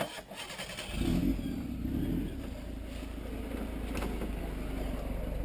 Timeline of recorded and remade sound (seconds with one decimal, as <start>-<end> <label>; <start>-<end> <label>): 0.0-5.4 recorded